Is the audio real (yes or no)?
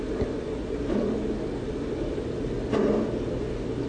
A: yes